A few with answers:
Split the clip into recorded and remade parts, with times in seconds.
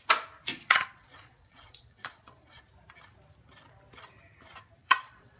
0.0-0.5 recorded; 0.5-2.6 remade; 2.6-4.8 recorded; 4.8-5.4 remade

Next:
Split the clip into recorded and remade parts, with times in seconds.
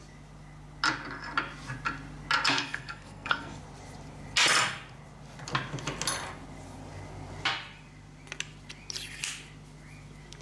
0.0-2.5 recorded; 2.5-3.6 remade; 3.6-10.4 recorded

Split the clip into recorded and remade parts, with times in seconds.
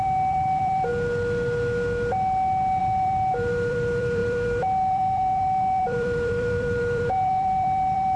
0.0-0.9 remade; 0.9-2.8 recorded; 2.8-8.2 remade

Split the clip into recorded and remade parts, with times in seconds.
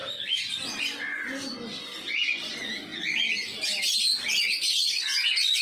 0.0-5.6 recorded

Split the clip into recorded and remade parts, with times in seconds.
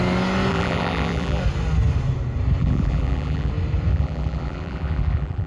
0.0-0.5 recorded; 0.5-1.4 remade; 1.4-2.6 recorded; 2.6-3.5 remade; 3.5-3.9 recorded; 3.9-5.5 remade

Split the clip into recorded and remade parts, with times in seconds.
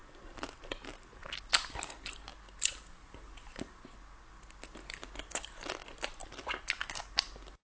0.0-7.6 recorded